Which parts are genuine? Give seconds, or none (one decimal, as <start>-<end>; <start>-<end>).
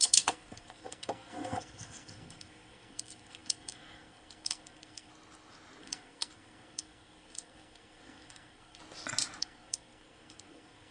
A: 5.1-5.8; 8.8-9.4